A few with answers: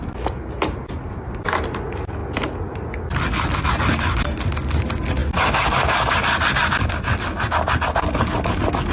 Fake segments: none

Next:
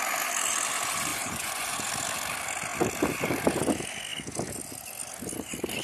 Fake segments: 1.1-1.9 (vocoder, Vocos)

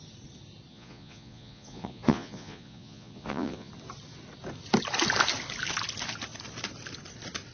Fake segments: 0.7-3.7 (vocoder, Vocos)

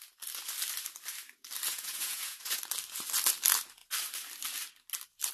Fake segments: 1.7-2.6 (vocoder, Vocos)

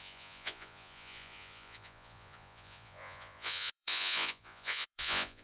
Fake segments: 0.0-5.4 (vocoder, Vocos)

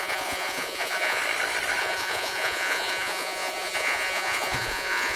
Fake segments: 0.0-1.2 (vocoder, Vocos); 1.8-5.2